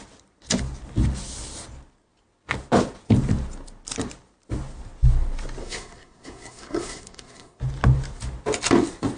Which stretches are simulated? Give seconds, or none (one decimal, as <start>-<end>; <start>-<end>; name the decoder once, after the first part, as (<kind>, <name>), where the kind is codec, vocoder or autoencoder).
5.6-7.6 (codec, SNAC)